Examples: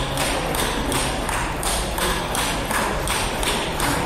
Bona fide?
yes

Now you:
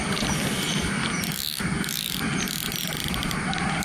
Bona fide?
yes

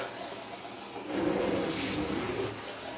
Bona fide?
yes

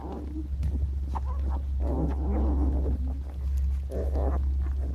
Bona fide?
yes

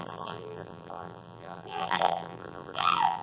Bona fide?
no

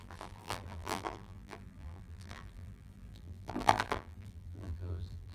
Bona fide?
no